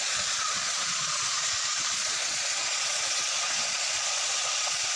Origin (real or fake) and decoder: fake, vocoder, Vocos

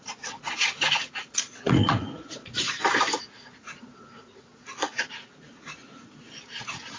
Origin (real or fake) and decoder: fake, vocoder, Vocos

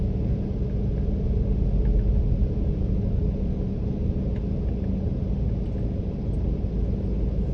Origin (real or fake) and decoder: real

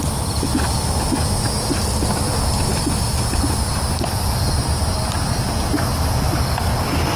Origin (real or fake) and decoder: real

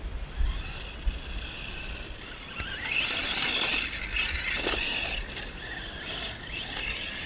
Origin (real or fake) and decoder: real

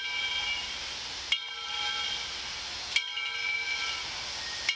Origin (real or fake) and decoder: real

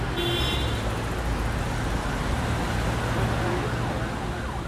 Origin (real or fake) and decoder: real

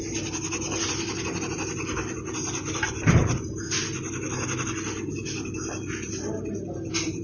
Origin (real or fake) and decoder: real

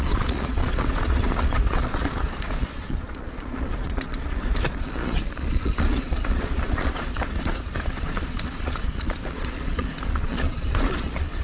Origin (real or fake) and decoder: fake, vocoder, Vocos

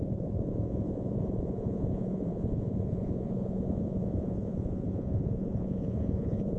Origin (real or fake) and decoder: fake, vocoder, Vocos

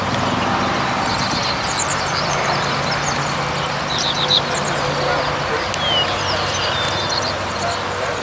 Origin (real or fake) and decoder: real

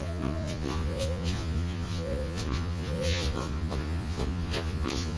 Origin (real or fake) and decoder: fake, vocoder, Vocos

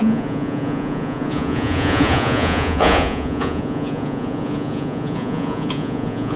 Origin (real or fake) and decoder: fake, vocoder, Vocos